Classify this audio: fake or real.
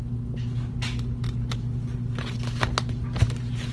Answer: real